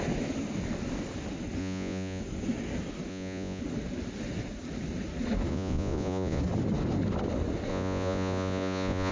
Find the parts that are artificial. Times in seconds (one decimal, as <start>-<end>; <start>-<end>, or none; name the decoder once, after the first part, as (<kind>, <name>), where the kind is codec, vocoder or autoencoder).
1.6-2.2 (vocoder, Vocos); 3.1-3.6; 5.5-6.4; 7.7-9.1